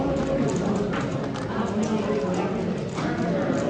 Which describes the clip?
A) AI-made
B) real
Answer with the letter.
B